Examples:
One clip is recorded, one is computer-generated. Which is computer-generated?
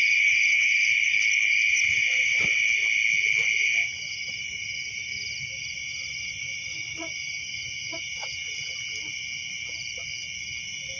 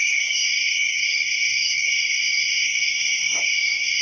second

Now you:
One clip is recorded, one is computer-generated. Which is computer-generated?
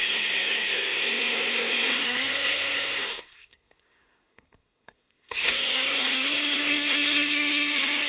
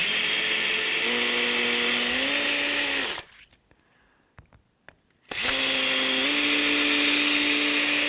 first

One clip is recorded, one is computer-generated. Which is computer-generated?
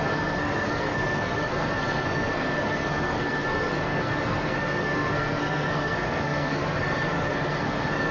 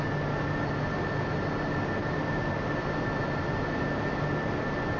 first